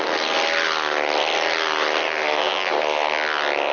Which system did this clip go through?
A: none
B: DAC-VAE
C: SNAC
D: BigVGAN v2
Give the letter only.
A